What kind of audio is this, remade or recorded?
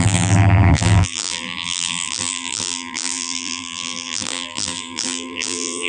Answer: remade